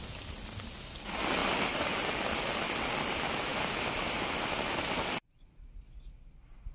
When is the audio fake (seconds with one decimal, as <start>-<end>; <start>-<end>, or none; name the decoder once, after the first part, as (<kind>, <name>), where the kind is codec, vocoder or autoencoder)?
1.4-1.9 (vocoder, BigVGAN v2)